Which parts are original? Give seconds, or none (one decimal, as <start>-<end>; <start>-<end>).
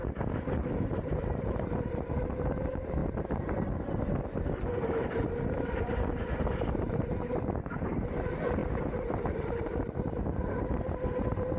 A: 3.0-5.7; 8.6-9.3